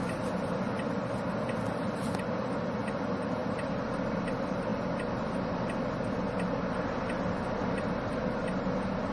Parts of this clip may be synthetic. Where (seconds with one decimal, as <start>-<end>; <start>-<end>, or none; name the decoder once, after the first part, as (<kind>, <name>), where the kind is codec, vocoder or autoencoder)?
none